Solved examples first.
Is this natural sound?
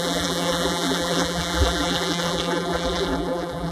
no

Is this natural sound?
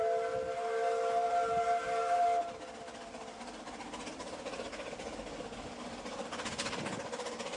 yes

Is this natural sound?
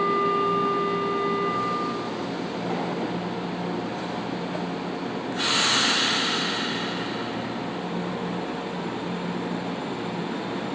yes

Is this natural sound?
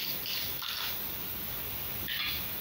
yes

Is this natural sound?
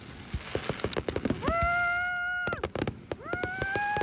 yes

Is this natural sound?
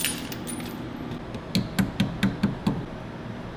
yes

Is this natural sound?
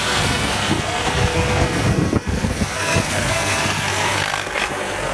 no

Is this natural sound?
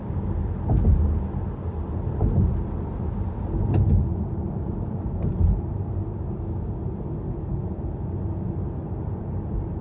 yes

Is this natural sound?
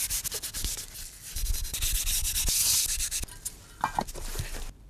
yes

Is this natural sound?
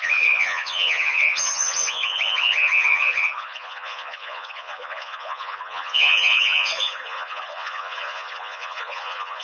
no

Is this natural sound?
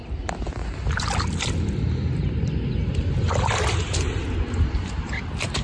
yes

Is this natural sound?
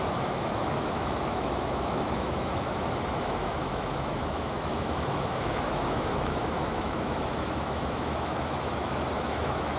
no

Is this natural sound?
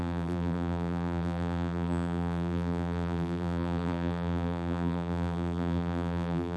no